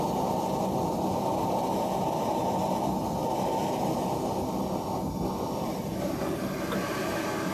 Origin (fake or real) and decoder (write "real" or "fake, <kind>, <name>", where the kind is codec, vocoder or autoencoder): real